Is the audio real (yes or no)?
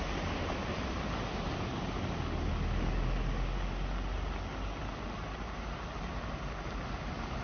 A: yes